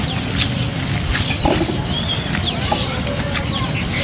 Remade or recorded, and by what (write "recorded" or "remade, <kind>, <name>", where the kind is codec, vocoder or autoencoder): recorded